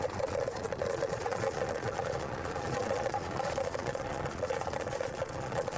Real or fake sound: fake